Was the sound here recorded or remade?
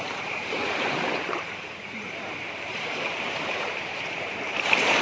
remade